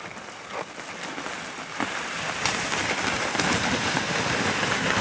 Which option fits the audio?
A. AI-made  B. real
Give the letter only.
B